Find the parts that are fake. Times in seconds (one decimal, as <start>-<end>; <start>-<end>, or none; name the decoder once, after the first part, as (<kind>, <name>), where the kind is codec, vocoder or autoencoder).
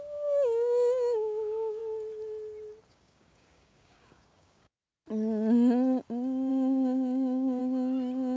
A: 0.0-1.8 (codec, DAC); 2.9-4.8; 6.5-7.6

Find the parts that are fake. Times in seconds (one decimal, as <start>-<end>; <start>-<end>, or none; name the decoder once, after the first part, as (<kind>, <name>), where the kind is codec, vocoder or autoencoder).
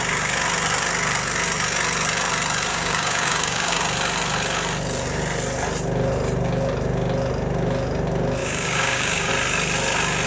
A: 2.7-3.8 (codec, DAC); 8.4-9.3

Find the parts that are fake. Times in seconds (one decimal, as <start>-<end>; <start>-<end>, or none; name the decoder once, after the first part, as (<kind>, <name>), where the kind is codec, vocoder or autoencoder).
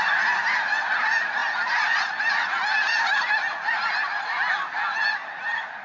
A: none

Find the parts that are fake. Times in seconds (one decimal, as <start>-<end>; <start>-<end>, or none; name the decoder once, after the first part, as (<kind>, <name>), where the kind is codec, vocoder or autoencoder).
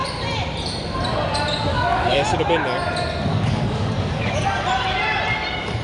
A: 1.7-2.2 (codec, DAC); 3.3-4.4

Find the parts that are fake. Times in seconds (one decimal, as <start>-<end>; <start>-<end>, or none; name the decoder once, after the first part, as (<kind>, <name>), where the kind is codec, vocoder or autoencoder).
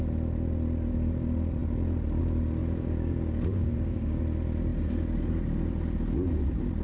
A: 2.6-4.2 (codec, DAC)